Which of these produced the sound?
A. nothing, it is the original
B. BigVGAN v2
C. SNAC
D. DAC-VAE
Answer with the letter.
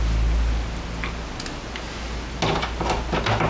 A